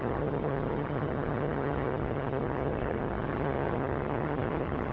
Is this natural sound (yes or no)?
no